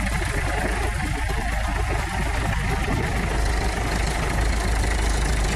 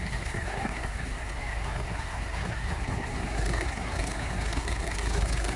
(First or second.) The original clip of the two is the first